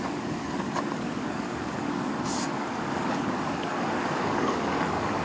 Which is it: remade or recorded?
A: remade